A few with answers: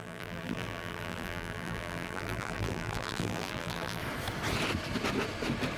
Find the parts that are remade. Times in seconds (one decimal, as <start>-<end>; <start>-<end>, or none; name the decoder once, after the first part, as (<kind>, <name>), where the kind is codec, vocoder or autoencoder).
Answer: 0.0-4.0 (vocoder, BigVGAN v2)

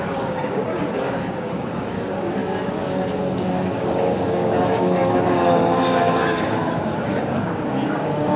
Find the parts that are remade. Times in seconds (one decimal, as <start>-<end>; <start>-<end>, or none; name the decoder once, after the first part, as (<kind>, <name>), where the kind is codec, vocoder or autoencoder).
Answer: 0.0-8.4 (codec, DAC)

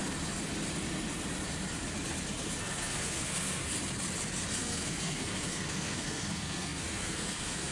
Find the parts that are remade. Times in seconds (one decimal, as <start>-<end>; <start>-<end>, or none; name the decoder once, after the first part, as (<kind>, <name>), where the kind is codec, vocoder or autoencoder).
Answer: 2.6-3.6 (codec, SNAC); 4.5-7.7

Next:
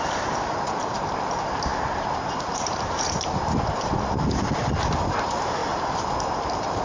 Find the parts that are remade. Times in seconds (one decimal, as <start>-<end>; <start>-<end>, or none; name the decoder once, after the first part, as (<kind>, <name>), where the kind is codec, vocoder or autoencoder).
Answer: 0.0-5.6 (vocoder, BigVGAN v2); 6.3-6.8